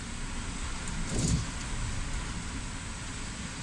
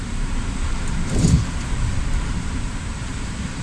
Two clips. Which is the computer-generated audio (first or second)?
second